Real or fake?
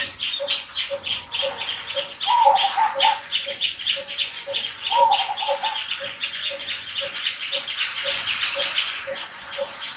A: fake